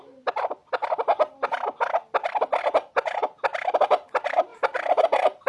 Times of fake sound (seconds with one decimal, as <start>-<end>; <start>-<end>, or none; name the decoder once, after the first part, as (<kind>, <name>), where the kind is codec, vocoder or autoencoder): 0.0-0.6 (vocoder, BigVGAN v2); 2.6-3.2; 3.9-5.5